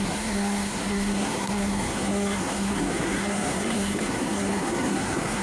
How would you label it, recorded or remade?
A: remade